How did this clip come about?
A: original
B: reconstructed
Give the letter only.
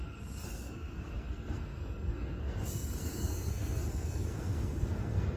B